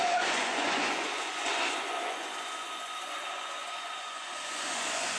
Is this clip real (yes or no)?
no